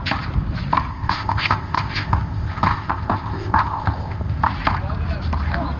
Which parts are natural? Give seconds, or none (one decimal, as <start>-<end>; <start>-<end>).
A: 0.0-0.9; 4.4-5.8